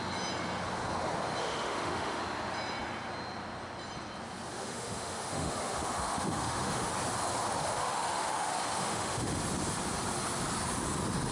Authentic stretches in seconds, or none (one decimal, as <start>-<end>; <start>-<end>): 0.0-1.4; 2.2-4.5; 6.9-7.6; 9.4-11.3